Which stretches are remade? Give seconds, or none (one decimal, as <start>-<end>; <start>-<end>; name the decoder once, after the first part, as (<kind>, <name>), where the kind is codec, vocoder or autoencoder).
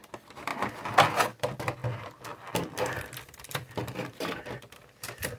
0.0-1.8 (vocoder, BigVGAN v2); 3.8-5.4